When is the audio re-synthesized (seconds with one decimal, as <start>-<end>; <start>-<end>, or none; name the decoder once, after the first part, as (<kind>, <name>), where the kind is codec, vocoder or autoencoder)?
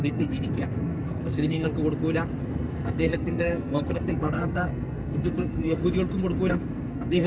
0.0-1.7 (codec, SNAC); 2.4-5.8; 6.5-7.3